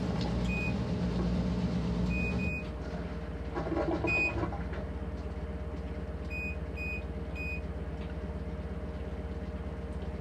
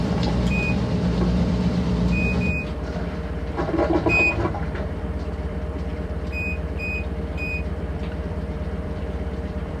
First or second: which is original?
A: first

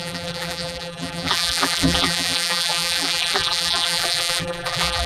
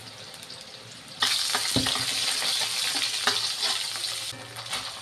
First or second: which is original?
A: second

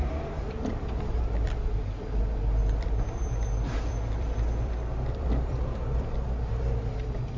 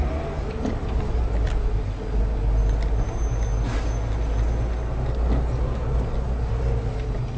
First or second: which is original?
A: second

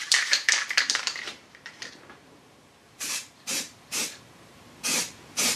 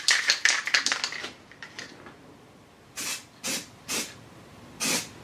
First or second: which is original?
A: second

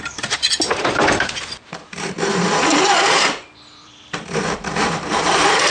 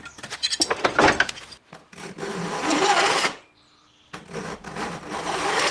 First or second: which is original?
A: second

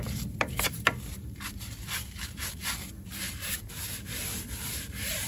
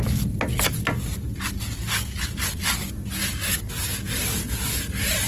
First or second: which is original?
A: second